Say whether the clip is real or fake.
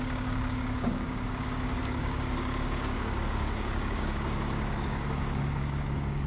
fake